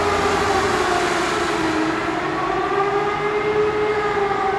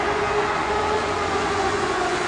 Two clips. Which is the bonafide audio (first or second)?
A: first